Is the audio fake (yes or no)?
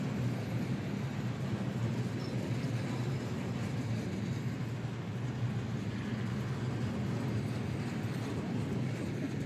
no